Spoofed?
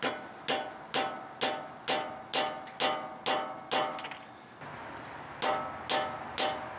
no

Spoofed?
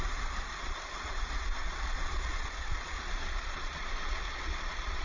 yes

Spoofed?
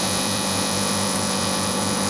yes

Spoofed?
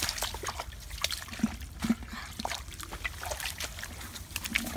no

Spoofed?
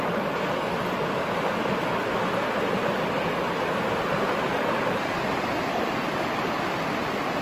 no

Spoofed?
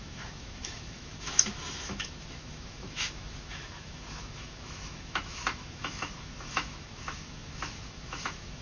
yes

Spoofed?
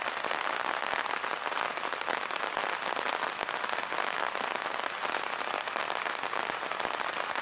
no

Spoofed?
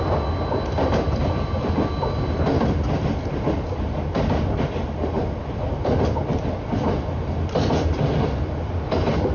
no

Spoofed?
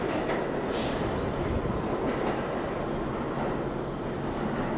no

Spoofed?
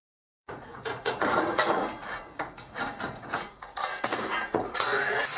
yes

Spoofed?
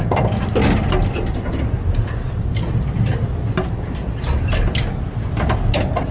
no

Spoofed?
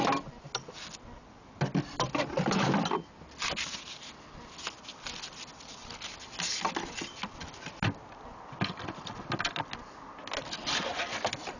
no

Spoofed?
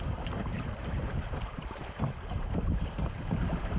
yes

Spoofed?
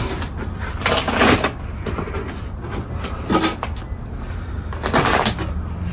no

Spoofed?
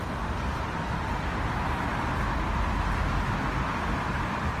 yes